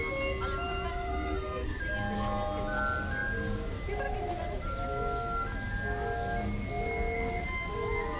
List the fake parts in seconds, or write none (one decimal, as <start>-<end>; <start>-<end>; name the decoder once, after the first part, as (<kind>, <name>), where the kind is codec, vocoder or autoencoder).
0.9-1.8 (codec, SNAC)